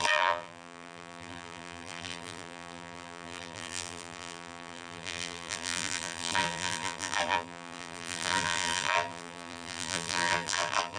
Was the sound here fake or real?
fake